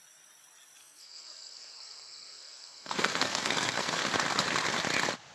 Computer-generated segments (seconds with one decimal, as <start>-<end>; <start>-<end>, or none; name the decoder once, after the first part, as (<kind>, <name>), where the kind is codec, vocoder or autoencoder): 0.8-4.0 (codec, SNAC)